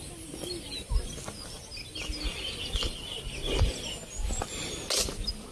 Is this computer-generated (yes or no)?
no